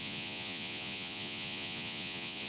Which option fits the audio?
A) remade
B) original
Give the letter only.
A